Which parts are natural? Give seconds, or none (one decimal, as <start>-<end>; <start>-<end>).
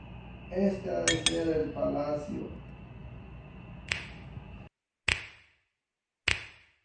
0.0-6.8